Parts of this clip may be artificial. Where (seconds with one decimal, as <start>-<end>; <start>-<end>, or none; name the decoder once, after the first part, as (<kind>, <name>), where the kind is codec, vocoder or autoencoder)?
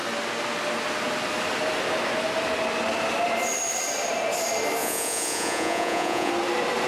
4.8-6.3 (vocoder, Vocos)